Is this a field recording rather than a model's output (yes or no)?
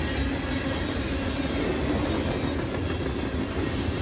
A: yes